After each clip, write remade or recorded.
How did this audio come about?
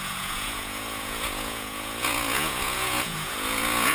remade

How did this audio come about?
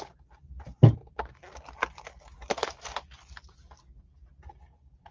recorded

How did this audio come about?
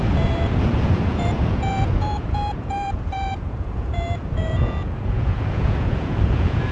remade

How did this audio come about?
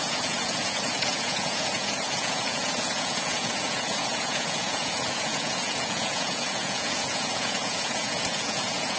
remade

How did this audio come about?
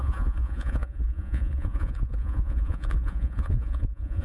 remade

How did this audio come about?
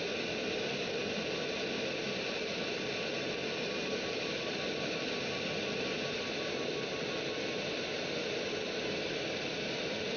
recorded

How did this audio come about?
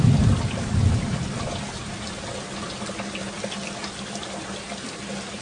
recorded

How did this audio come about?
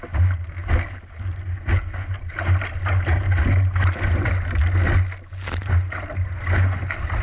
recorded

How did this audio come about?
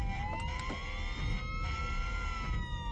recorded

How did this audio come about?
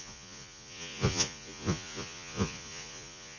remade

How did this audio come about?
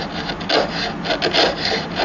recorded